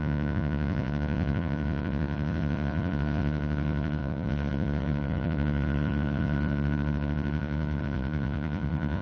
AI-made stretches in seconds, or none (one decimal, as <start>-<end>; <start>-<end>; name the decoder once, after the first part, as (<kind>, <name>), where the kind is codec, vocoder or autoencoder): 0.0-9.0 (vocoder, Vocos)